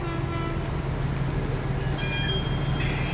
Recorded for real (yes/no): yes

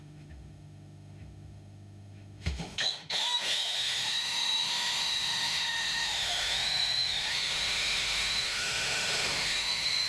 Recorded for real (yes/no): no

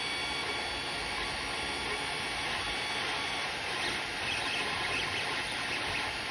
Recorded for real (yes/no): yes